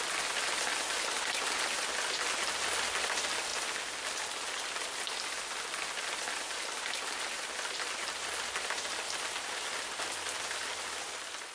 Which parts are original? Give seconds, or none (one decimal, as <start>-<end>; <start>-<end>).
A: 0.0-11.5